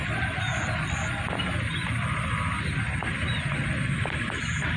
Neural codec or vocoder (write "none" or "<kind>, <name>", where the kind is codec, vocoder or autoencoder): none